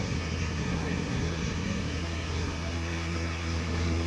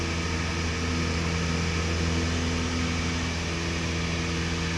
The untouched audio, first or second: second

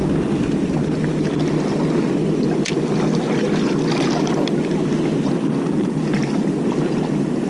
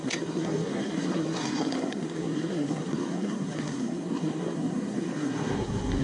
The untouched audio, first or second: first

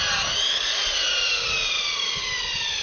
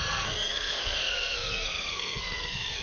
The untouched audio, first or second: first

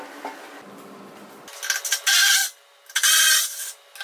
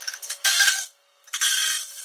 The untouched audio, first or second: first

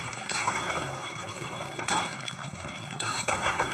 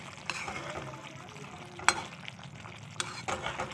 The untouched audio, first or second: second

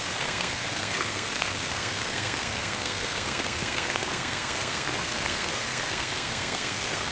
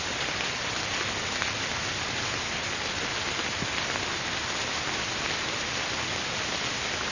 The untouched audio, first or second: second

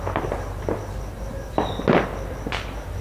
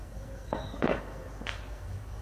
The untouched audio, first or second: first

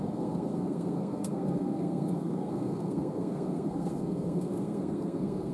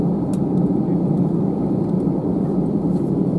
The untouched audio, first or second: second